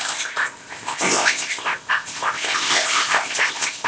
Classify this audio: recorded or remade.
remade